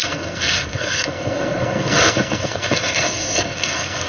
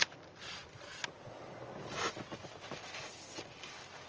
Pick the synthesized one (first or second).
first